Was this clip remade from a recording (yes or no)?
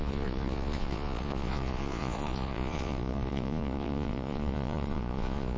yes